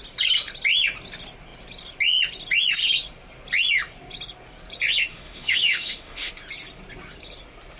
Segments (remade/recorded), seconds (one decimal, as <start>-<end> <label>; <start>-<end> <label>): 0.0-5.1 recorded; 5.1-6.3 remade; 6.3-7.8 recorded